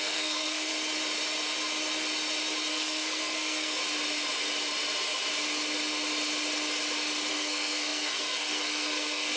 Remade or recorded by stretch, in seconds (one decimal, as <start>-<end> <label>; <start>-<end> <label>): 0.0-0.7 remade; 0.7-2.7 recorded; 2.7-3.8 remade; 3.8-7.3 recorded; 7.3-9.4 remade